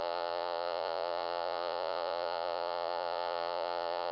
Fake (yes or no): yes